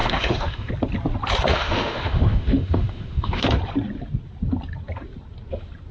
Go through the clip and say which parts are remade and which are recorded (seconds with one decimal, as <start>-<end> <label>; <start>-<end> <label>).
0.0-0.7 remade; 0.7-1.5 recorded; 1.5-3.4 remade; 3.4-5.9 recorded